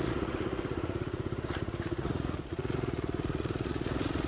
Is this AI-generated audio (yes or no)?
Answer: yes